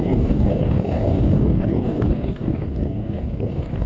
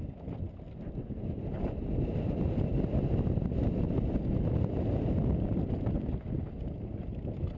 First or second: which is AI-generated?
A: first